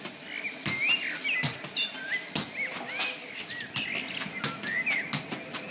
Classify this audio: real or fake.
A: real